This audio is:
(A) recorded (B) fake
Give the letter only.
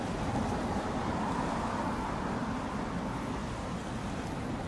A